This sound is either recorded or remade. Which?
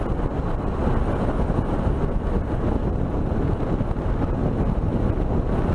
recorded